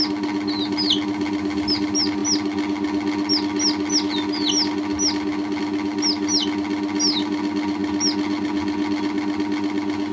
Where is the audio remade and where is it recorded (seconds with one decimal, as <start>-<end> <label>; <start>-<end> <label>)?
0.0-10.1 recorded